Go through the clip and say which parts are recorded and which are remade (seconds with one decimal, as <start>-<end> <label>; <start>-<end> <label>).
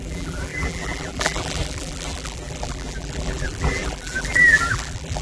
0.0-5.2 remade